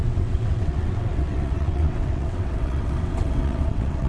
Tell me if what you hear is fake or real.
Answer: fake